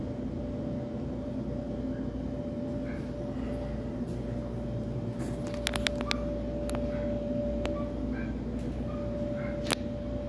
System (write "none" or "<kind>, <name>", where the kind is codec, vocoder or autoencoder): none